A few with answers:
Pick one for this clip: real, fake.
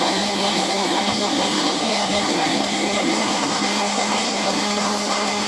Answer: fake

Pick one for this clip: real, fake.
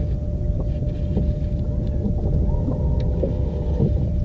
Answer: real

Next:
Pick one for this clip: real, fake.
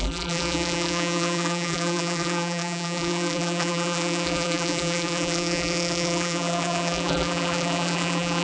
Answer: fake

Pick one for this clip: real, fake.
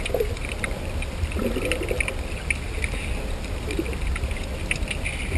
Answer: real